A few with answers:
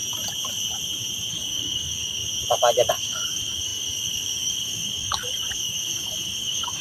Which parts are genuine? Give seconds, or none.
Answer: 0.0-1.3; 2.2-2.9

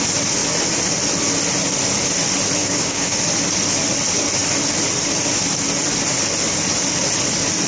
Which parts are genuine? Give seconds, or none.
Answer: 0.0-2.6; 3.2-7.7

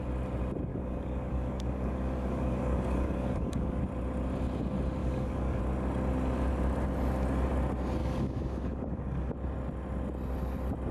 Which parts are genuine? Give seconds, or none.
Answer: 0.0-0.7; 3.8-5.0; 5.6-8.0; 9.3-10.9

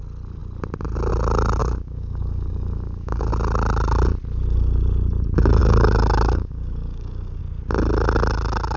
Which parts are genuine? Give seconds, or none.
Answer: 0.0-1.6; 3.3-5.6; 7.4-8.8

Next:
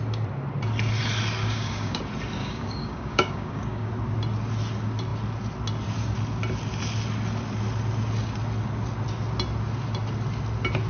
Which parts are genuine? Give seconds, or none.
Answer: 0.0-1.4; 2.0-2.4; 3.9-10.9

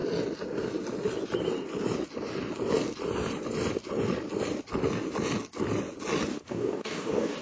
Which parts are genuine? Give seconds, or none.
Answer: 0.0-6.3